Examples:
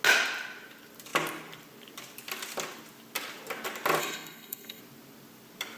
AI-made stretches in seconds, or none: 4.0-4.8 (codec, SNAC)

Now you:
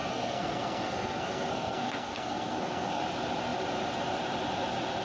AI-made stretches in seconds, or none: 0.0-3.0 (codec, SNAC)